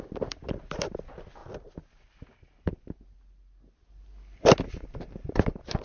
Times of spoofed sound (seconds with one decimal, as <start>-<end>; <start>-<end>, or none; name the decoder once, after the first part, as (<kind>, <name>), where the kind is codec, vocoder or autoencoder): 0.0-1.4 (vocoder, BigVGAN v2); 4.9-5.8